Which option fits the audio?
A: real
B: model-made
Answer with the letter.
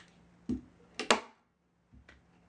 A